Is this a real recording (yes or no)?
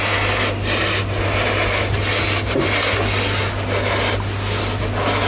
yes